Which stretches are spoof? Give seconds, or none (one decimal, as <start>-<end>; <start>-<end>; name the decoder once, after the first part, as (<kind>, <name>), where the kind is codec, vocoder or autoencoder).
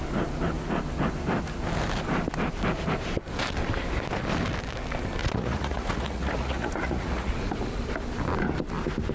5.2-7.3 (vocoder, Vocos)